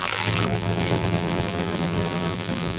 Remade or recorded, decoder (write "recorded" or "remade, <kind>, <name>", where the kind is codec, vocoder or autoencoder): remade, vocoder, BigVGAN v2